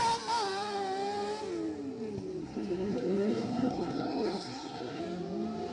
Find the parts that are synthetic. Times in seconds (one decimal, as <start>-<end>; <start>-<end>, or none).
2.4-5.0